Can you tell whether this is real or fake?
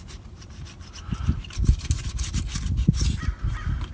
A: fake